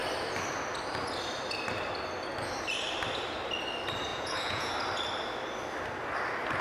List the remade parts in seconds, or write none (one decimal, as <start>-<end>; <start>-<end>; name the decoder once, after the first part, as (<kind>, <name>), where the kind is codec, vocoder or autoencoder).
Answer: 4.1-4.7 (vocoder, Vocos)